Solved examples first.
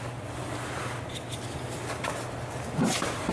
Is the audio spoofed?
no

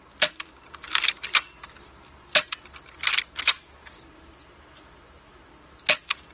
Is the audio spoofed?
no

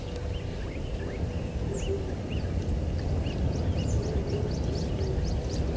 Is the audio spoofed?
no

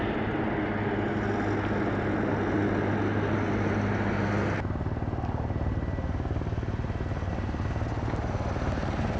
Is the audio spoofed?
no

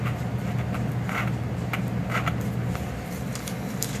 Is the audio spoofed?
no